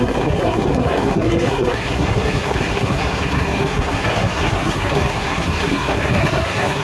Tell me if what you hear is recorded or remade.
remade